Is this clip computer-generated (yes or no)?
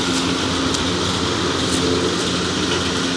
no